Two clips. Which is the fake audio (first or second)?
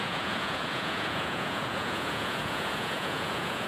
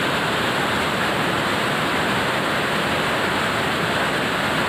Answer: first